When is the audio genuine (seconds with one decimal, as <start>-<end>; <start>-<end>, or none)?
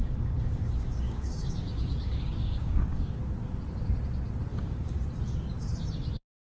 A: 3.2-4.5; 5.0-6.6